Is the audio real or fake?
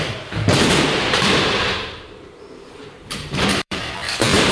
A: fake